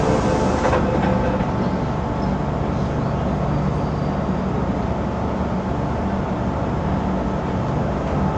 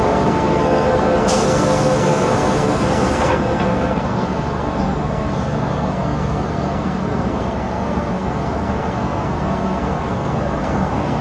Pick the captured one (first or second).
first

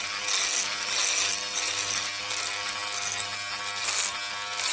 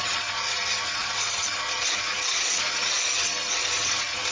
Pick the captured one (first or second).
first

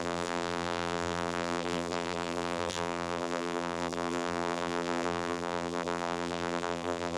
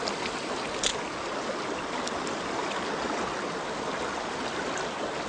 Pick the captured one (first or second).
second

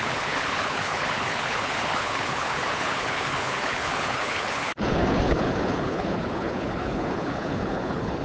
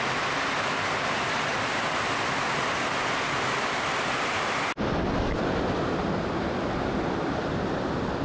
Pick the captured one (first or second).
second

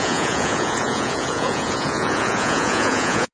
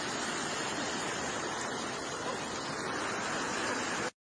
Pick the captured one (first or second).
second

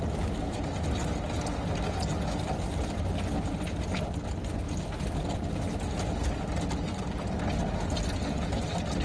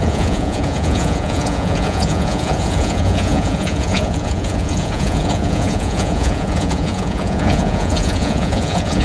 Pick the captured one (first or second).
first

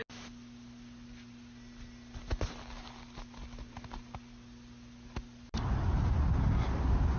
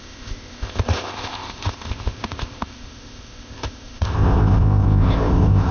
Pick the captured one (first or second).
first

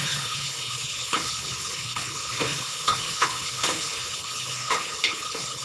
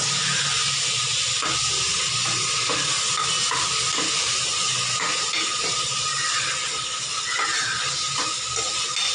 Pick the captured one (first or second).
second